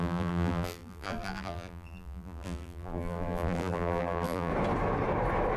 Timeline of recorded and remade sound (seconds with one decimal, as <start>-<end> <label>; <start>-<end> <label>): 0.0-4.5 remade; 4.5-5.6 recorded